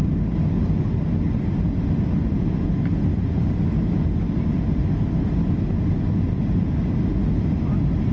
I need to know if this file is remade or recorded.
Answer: recorded